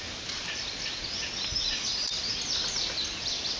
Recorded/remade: recorded